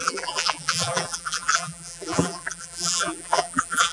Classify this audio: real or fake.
fake